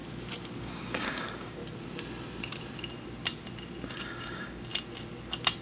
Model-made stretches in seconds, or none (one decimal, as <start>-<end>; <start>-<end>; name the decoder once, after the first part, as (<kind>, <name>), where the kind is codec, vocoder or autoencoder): 0.6-1.6 (codec, DAC); 3.9-4.7

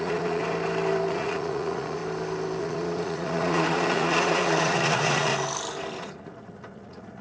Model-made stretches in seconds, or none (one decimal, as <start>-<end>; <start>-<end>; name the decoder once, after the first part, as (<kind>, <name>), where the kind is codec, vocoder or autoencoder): 0.0-0.4 (vocoder, Vocos); 1.1-2.0; 2.6-5.3; 6.0-7.2

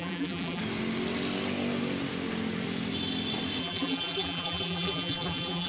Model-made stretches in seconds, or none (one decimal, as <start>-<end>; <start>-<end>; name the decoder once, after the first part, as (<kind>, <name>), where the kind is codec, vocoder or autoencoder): 0.0-0.6 (vocoder, BigVGAN v2); 3.6-5.7

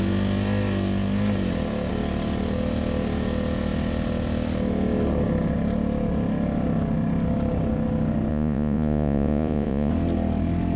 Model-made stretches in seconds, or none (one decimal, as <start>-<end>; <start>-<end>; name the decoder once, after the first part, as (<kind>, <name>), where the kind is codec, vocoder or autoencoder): 8.3-9.9 (vocoder, Vocos)

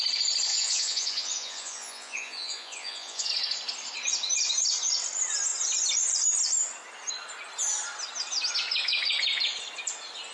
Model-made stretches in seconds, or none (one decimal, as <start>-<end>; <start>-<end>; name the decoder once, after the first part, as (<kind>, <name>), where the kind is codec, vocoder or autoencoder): 0.5-3.3 (vocoder, Vocos)